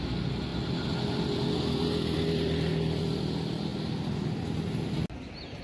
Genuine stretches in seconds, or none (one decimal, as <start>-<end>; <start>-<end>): 0.0-5.6